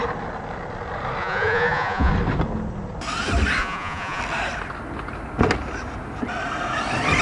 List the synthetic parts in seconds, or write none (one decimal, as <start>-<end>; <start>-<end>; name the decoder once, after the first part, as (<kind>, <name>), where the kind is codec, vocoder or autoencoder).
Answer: 1.2-2.1 (vocoder, Vocos); 3.6-4.2